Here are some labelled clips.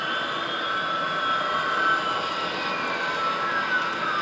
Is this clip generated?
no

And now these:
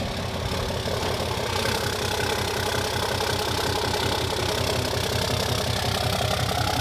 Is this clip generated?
no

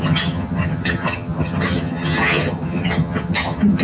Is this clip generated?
yes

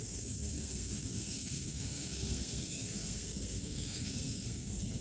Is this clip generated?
yes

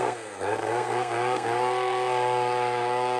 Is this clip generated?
yes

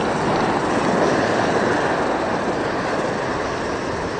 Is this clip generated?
no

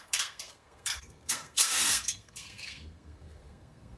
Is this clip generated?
yes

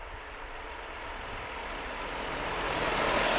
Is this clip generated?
yes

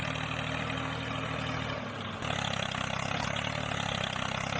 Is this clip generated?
no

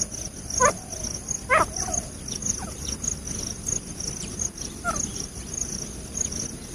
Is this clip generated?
no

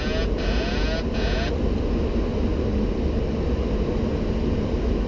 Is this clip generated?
no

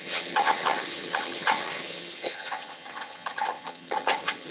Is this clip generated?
yes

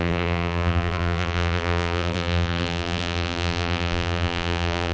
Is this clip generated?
yes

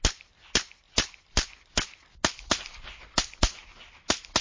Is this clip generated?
no